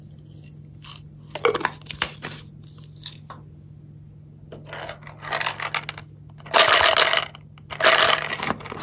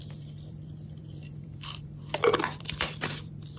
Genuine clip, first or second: first